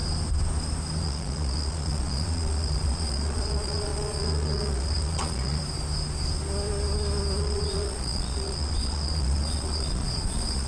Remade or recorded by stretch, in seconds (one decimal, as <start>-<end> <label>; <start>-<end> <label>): 0.0-1.0 recorded; 1.0-5.6 remade; 5.6-7.4 recorded; 7.4-10.7 remade